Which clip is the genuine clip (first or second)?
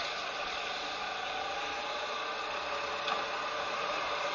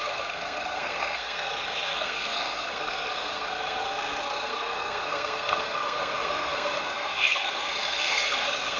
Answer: first